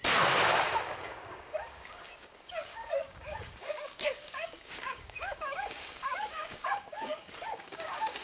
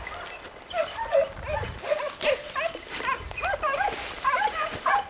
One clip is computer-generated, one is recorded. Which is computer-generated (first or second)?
first